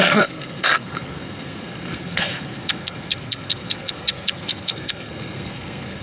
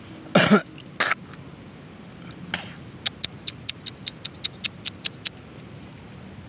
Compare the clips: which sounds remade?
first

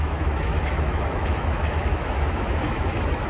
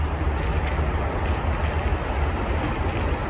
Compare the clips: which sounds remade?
first